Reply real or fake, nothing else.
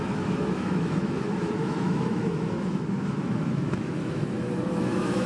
fake